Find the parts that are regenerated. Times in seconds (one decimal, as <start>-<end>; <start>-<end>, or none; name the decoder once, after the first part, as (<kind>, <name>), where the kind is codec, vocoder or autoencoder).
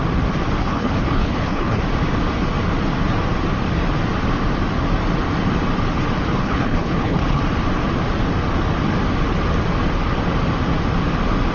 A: 0.6-1.8 (codec, HILCodec); 6.4-7.4